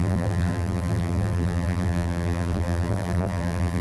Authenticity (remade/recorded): remade